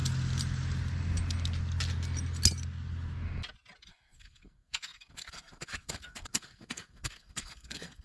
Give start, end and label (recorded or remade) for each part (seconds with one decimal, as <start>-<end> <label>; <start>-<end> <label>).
0.0-3.9 recorded; 3.9-8.0 remade